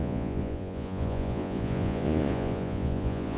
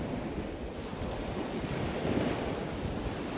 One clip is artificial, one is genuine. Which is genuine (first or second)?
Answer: second